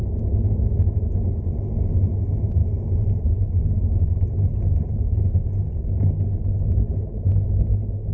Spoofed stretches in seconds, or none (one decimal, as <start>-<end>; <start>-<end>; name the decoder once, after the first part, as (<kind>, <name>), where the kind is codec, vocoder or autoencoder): 6.6-7.3 (codec, HILCodec)